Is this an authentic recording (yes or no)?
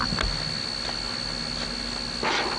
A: yes